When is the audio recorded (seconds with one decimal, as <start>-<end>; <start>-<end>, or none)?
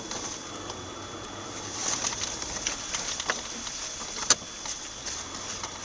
0.0-5.8